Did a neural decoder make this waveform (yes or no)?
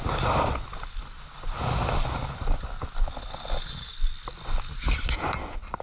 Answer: no